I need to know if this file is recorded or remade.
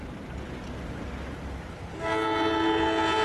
recorded